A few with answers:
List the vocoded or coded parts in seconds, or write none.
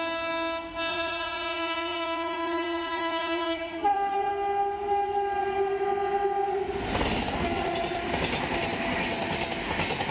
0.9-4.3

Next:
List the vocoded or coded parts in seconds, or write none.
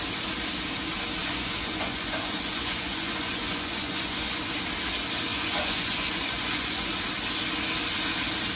1.2-4.5; 5.3-6.9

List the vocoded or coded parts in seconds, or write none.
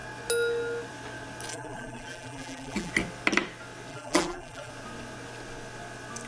1.5-2.9; 3.9-4.7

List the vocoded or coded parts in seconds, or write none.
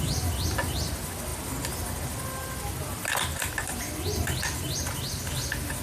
none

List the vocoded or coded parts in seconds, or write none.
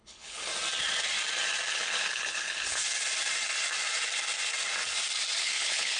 0.0-0.5; 1.7-2.8; 5.4-6.0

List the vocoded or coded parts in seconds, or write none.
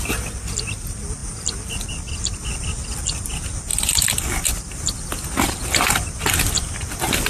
none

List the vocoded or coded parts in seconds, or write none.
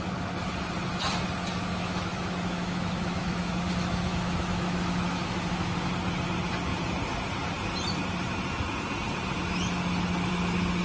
1.7-5.9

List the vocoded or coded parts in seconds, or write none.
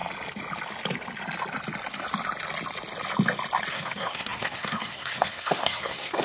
3.7-6.2